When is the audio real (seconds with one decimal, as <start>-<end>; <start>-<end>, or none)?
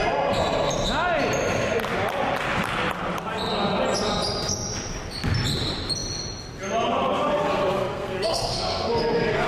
0.0-7.4